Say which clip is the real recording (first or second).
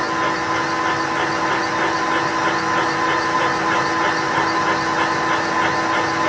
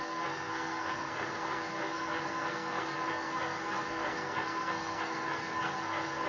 first